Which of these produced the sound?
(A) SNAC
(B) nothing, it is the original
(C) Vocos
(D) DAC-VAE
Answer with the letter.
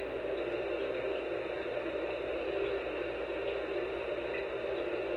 B